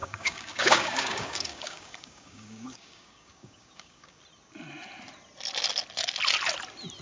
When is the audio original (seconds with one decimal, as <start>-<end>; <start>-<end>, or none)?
4.2-7.0